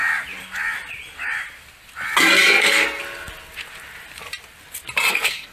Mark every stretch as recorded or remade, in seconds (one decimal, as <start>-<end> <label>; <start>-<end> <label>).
0.0-2.6 recorded; 2.6-3.0 remade; 3.0-5.1 recorded; 5.1-5.5 remade